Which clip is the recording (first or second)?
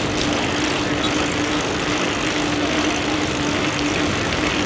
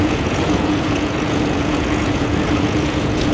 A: first